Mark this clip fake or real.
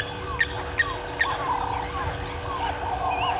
real